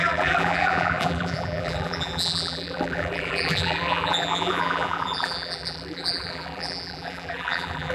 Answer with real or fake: fake